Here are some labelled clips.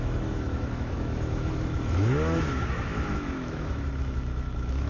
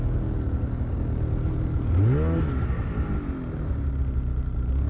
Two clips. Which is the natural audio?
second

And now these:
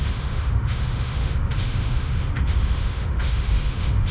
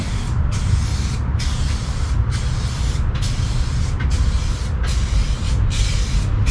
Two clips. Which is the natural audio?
second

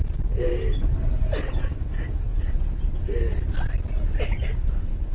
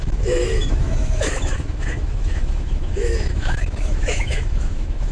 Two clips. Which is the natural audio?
first